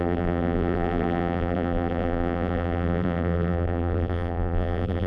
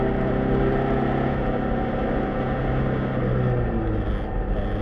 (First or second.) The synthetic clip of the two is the first